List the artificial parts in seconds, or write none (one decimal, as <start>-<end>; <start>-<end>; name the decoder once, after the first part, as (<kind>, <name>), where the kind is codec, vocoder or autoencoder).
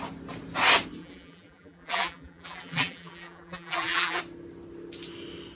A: 1.0-4.2 (vocoder, BigVGAN v2)